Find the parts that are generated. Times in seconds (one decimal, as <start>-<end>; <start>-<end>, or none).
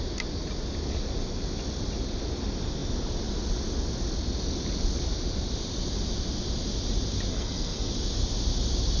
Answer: 7.3-7.9